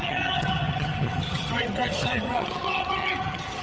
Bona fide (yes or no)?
no